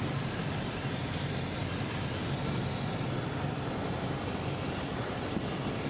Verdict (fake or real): fake